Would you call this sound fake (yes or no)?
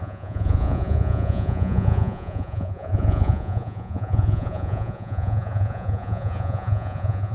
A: yes